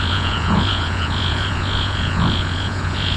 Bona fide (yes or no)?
no